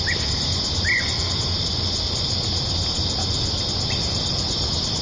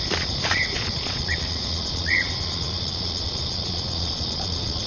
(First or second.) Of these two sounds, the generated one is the second